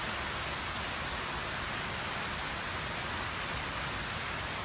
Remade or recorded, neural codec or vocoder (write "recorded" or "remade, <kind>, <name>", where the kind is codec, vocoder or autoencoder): recorded